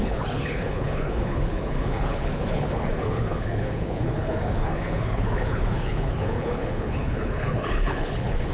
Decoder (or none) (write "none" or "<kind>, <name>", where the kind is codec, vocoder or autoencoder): codec, HILCodec